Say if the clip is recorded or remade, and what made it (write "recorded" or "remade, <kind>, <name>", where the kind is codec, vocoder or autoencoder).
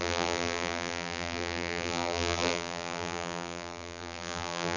remade, vocoder, BigVGAN v2